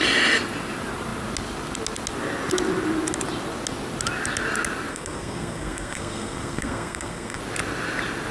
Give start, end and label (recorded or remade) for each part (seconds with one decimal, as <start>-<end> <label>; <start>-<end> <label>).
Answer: 0.0-4.9 recorded; 4.9-7.4 remade; 7.4-8.3 recorded